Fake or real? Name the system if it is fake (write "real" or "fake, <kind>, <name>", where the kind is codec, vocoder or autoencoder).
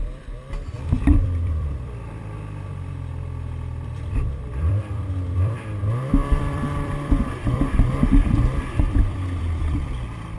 fake, vocoder, BigVGAN v2